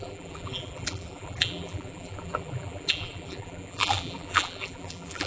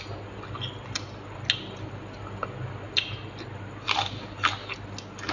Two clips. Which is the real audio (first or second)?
second